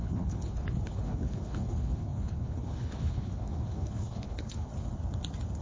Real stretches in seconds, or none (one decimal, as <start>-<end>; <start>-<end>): 4.7-5.6